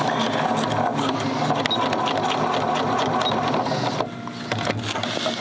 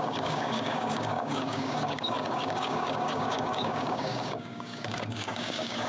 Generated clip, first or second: second